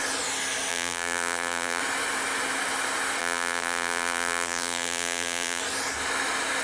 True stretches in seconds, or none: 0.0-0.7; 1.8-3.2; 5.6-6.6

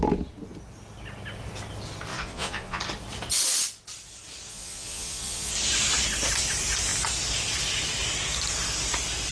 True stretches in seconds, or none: 0.0-2.1; 2.8-4.5; 5.5-9.3

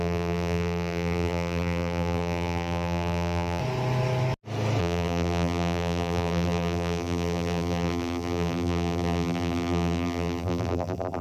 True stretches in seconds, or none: 3.6-4.8

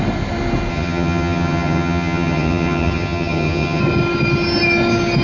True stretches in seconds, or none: 0.0-0.7; 3.8-5.2

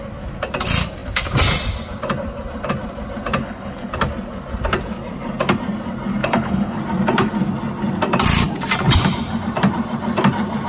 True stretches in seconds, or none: 0.0-3.4; 3.9-6.2; 6.8-10.7

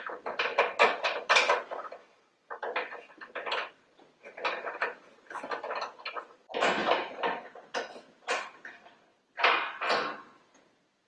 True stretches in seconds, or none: 0.0-6.8; 7.8-9.1; 9.8-11.1